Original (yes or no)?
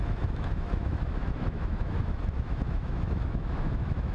no